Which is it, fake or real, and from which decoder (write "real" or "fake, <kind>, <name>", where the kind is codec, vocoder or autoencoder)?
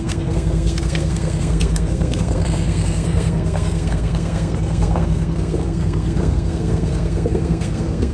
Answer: fake, codec, SNAC